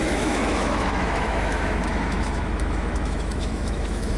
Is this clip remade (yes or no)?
yes